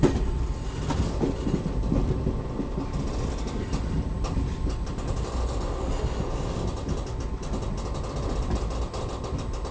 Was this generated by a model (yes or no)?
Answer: no